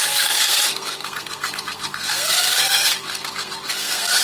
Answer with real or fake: fake